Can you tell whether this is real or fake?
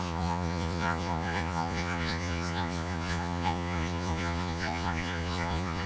fake